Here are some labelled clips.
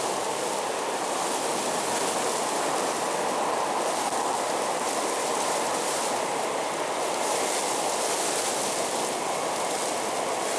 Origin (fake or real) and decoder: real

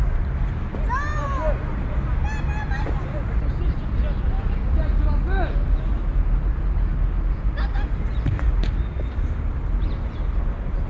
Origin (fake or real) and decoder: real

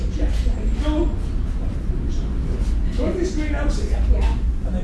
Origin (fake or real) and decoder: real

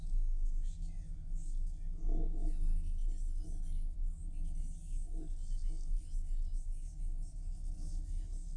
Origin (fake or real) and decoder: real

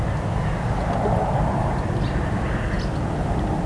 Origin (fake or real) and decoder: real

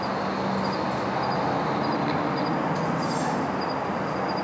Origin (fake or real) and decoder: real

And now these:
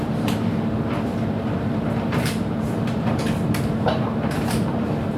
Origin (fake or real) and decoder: fake, vocoder, BigVGAN v2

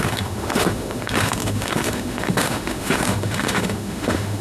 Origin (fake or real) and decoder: fake, autoencoder, DAC-VAE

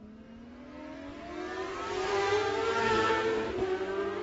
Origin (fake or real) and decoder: real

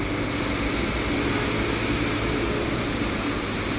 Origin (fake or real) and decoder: real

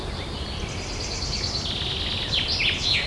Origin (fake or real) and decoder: real